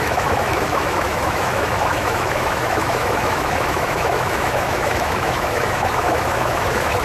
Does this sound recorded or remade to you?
remade